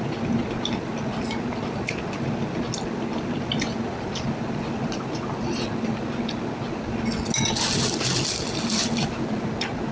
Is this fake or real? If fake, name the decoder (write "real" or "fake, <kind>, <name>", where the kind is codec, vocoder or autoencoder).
real